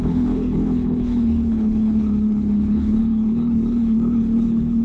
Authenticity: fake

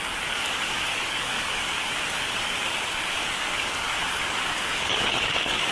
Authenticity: fake